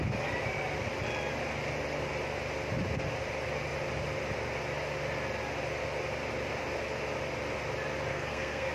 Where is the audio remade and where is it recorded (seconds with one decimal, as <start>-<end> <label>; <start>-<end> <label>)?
0.0-8.1 recorded; 8.1-8.7 remade